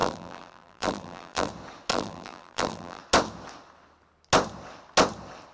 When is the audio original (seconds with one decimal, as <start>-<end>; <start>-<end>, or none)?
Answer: 1.5-1.9; 3.0-5.5